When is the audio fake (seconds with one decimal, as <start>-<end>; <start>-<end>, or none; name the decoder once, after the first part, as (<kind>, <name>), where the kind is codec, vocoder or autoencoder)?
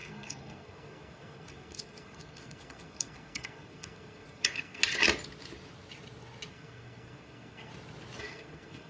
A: 0.0-4.8 (codec, SNAC); 6.5-7.7; 8.2-8.9